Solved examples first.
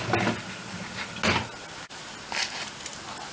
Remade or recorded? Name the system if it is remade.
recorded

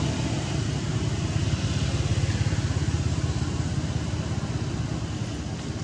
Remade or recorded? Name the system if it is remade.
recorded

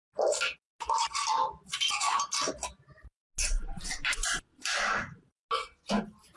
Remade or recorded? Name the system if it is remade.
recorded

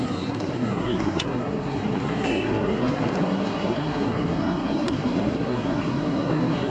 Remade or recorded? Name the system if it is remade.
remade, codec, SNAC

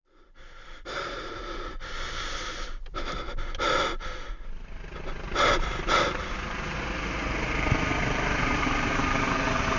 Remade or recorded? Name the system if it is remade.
recorded